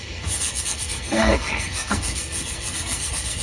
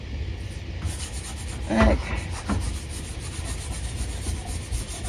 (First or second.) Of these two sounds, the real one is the second